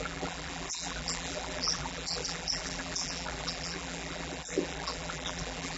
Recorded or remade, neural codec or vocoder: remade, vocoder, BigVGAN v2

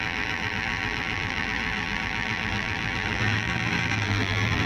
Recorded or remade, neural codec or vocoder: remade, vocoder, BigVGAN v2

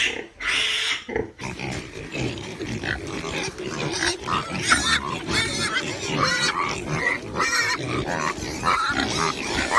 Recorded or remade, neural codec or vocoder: recorded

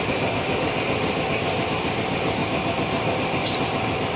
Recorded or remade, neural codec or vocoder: remade, vocoder, BigVGAN v2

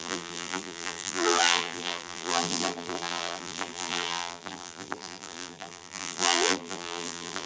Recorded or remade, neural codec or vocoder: remade, vocoder, BigVGAN v2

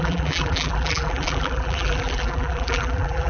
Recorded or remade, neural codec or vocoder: remade, vocoder, BigVGAN v2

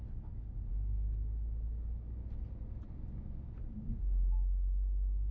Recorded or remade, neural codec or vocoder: recorded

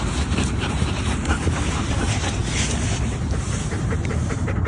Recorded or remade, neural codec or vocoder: remade, vocoder, BigVGAN v2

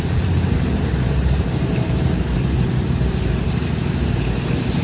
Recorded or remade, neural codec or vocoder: remade, vocoder, BigVGAN v2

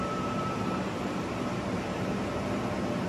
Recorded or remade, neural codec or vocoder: remade, vocoder, BigVGAN v2